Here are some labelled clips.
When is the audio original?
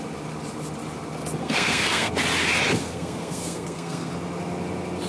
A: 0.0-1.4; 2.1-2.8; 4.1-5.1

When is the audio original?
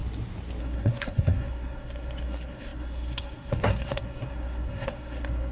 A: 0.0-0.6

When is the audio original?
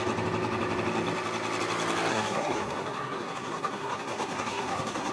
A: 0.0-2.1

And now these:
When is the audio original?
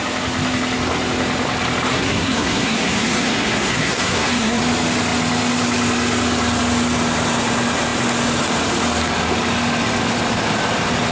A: 0.0-1.9; 4.6-11.1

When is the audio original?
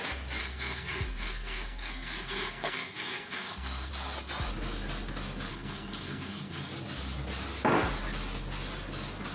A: 0.0-0.4; 3.9-5.5; 6.7-9.3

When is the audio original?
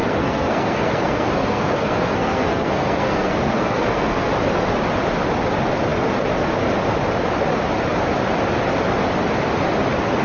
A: 4.3-10.2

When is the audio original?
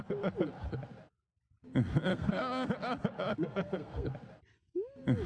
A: 0.0-2.1; 2.7-3.3; 4.1-5.3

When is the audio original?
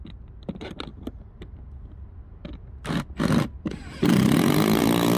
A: 0.0-5.2